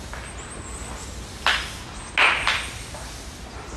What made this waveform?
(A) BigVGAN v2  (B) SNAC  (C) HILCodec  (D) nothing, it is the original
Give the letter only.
D